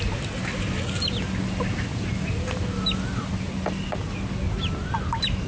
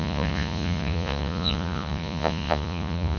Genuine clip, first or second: first